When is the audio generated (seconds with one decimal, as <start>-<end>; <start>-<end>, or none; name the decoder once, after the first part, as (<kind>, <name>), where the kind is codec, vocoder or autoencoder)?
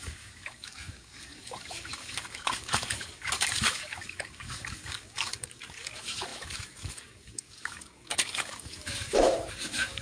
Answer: 0.0-10.0 (codec, DAC)